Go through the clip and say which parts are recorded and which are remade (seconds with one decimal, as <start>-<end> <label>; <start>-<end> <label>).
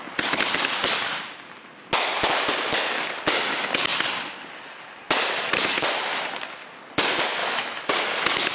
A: 0.0-7.4 recorded; 7.4-7.9 remade; 7.9-8.5 recorded